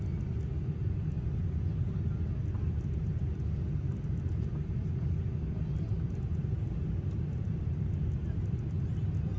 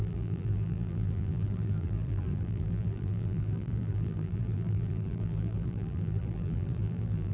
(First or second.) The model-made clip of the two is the second